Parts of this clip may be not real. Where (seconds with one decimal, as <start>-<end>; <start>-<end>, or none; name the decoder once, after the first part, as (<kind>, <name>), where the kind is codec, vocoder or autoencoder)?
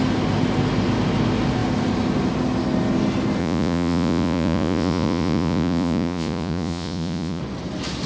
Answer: 3.4-7.4 (vocoder, Vocos)